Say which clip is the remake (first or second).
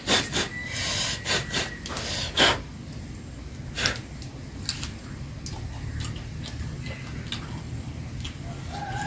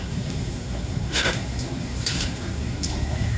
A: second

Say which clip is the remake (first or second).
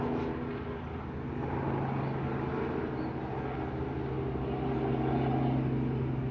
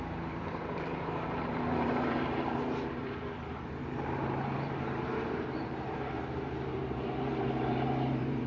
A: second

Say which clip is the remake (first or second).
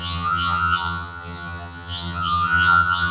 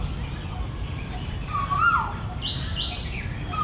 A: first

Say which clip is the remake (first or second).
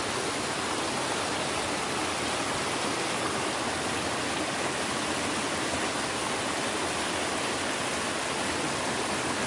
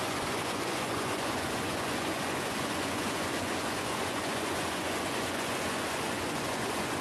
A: second